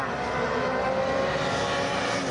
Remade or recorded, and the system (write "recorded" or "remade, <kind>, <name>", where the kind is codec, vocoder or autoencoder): recorded